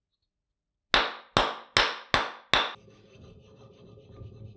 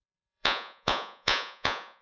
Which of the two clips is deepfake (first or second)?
second